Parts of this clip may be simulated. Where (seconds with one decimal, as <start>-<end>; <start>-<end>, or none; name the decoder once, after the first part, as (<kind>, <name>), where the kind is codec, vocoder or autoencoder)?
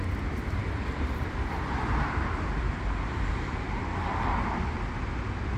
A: 0.6-3.3 (vocoder, BigVGAN v2)